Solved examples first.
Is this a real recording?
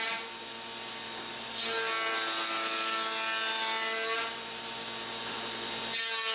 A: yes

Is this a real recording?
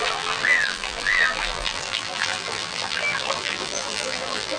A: no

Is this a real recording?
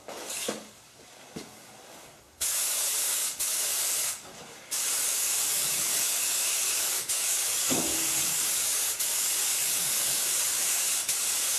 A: no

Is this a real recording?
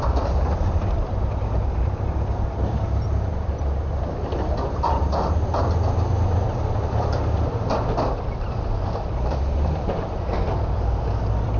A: no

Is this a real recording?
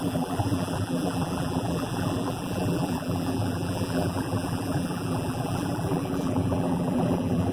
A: no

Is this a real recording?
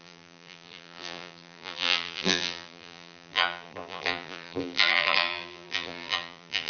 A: no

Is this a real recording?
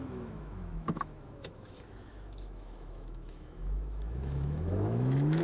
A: no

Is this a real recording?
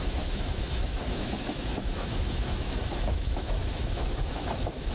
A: no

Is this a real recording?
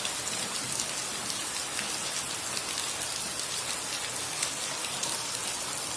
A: yes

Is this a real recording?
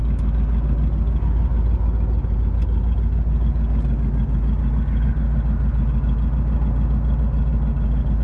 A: yes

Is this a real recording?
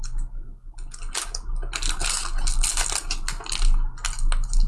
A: yes